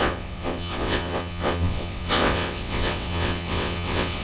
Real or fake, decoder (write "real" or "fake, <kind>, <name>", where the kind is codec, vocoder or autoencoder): fake, vocoder, WaveNeXt